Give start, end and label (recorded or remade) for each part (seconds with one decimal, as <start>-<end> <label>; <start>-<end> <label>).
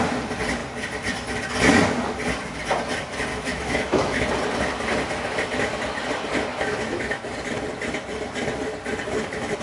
0.0-3.3 recorded; 3.3-4.2 remade; 4.2-6.5 recorded; 6.5-7.2 remade; 7.2-9.6 recorded